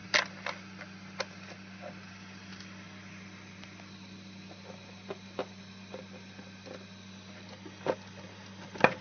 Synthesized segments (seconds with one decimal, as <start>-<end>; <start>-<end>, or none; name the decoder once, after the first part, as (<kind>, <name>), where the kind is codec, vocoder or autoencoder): none